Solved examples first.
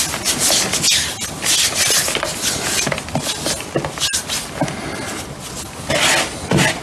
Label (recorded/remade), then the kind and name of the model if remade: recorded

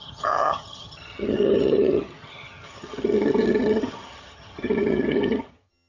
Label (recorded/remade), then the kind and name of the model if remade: remade, vocoder, HiFi-GAN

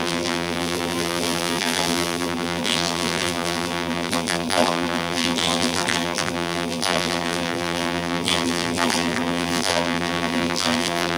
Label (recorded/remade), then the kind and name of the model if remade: remade, vocoder, BigVGAN v2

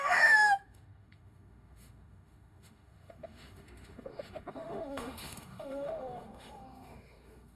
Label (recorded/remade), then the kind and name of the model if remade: remade, autoencoder, DAC-VAE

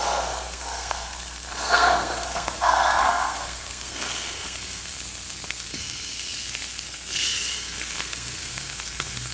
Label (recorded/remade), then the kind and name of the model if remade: remade, codec, SNAC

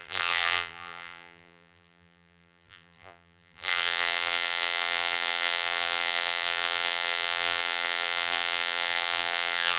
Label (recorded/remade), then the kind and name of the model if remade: remade, vocoder, BigVGAN v2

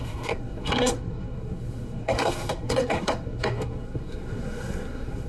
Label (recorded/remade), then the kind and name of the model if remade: remade, codec, SNAC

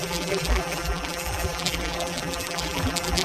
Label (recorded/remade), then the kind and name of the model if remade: remade, vocoder, BigVGAN v2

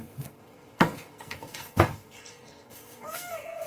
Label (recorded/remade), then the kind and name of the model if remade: remade, codec, SNAC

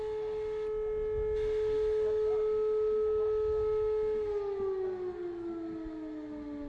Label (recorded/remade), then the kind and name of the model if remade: recorded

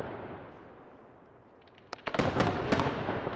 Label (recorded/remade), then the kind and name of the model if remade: recorded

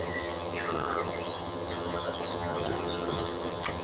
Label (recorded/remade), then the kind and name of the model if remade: remade, vocoder, HiFi-GAN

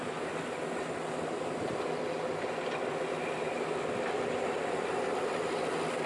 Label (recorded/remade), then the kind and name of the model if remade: recorded